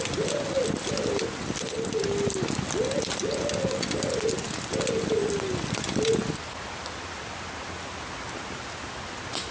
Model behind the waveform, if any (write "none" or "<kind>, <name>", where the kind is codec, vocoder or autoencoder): none